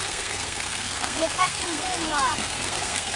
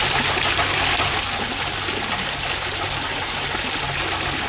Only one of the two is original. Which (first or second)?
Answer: second